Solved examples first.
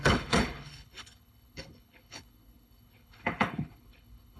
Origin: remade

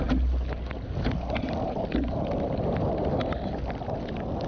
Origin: recorded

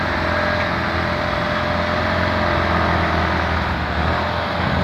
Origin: recorded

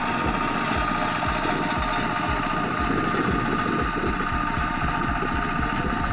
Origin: recorded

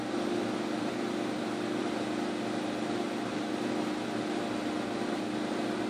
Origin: recorded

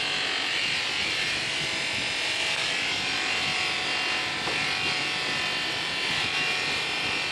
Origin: recorded